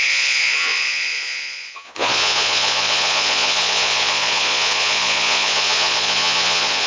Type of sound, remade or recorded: remade